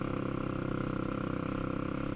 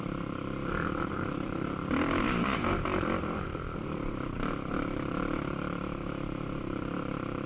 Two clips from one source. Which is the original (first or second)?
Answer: first